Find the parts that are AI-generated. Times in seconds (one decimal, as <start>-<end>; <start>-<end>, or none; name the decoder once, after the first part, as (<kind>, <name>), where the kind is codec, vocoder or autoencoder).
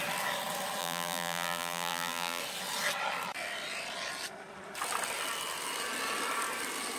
0.8-2.4 (vocoder, BigVGAN v2)